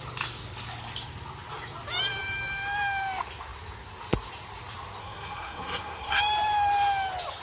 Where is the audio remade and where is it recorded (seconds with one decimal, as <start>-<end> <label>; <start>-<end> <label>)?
0.0-5.0 recorded; 5.0-6.2 remade; 6.2-7.4 recorded